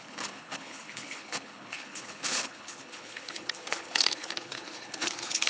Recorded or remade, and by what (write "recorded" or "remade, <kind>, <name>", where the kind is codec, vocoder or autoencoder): remade, codec, HILCodec